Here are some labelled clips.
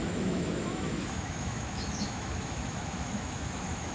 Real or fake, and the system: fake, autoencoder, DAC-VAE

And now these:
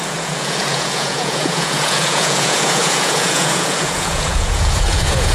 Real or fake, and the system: fake, vocoder, Vocos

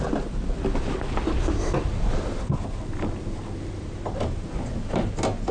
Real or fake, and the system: real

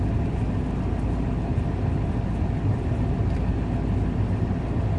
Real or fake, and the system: real